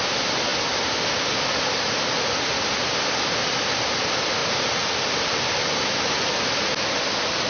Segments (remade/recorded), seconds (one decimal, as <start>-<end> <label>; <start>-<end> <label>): 0.0-7.5 recorded